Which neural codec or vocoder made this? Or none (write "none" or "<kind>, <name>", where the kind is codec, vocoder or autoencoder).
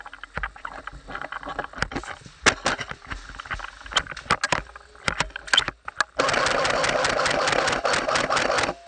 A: none